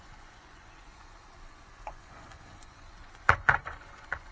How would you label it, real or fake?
fake